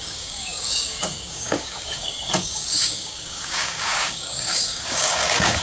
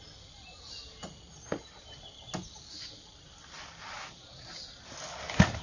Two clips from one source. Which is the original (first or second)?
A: second